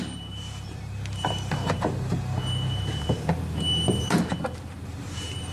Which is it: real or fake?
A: fake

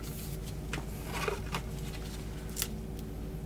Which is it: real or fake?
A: real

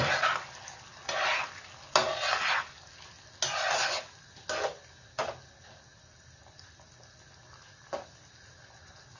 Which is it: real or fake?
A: real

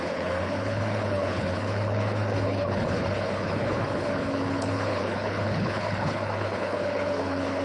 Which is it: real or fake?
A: fake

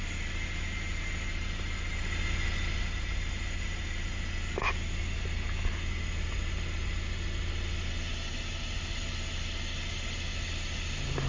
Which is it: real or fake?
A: real